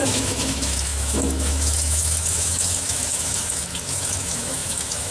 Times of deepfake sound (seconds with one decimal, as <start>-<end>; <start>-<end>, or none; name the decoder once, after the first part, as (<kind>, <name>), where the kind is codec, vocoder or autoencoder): 0.0-5.1 (autoencoder, DAC-VAE)